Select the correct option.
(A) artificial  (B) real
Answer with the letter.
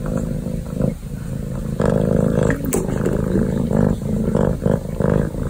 B